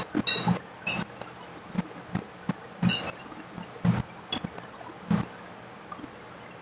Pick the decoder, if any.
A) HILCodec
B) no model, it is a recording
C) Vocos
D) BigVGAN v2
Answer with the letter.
B